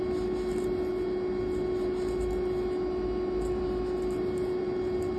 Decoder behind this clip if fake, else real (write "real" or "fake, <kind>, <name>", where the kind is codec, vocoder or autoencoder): real